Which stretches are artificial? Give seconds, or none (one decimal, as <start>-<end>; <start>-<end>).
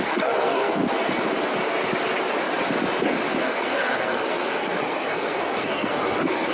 0.0-0.8; 3.4-6.5